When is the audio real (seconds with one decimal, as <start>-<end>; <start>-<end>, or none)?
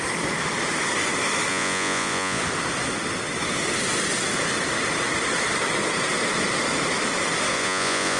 0.0-1.5; 2.4-7.5